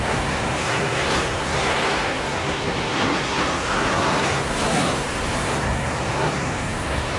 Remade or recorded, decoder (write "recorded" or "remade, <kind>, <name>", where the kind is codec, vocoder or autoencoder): remade, codec, SNAC